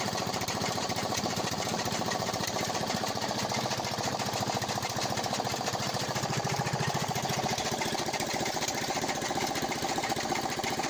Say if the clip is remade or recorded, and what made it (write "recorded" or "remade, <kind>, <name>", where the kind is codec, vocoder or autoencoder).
remade, vocoder, BigVGAN v2